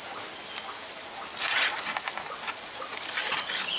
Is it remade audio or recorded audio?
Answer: recorded